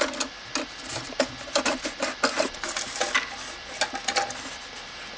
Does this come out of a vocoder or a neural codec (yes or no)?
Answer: no